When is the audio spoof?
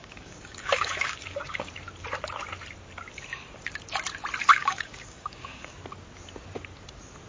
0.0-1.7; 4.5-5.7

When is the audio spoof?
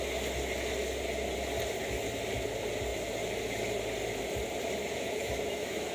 4.8-5.9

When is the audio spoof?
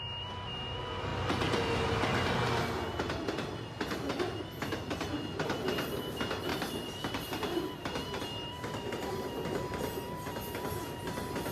6.5-8.2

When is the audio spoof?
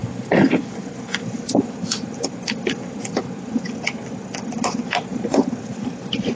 0.0-3.7; 5.1-6.4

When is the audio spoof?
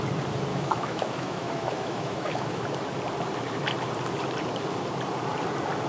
0.5-2.6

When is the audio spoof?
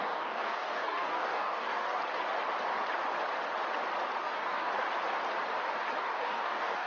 0.0-2.0; 4.2-4.7; 6.0-6.9